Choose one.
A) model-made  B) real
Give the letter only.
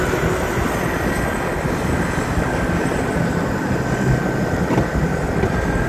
B